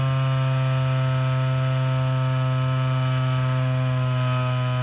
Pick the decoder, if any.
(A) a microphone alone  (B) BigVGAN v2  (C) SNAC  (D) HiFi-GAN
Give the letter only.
A